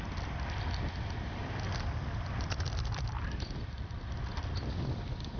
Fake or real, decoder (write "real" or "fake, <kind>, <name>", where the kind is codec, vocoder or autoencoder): fake, vocoder, BigVGAN v2